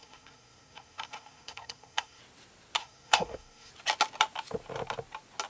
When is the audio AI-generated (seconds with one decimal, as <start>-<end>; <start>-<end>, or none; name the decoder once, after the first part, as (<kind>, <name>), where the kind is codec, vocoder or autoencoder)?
0.0-2.2 (codec, SNAC); 2.8-3.7